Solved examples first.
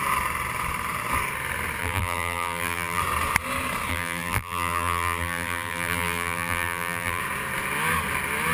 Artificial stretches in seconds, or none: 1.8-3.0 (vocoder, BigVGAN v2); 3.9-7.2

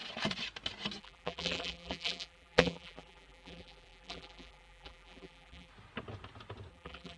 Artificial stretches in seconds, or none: 1.0-5.7 (vocoder, BigVGAN v2); 6.7-7.2

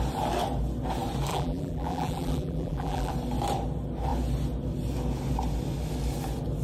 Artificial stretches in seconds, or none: 1.3-3.1 (vocoder, BigVGAN v2)